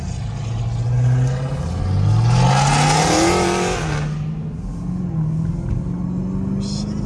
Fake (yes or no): no